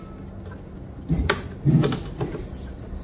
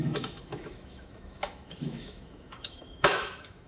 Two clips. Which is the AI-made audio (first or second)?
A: second